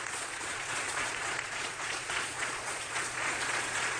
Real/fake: fake